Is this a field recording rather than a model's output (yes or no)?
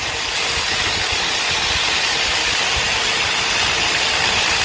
yes